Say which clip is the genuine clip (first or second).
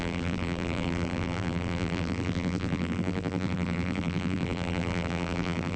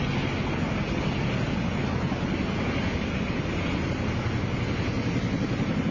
second